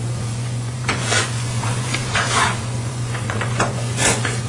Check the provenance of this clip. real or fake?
fake